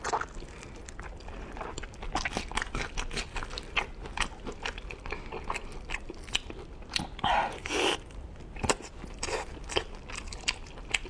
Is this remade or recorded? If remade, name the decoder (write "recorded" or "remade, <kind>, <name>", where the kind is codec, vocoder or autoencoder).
recorded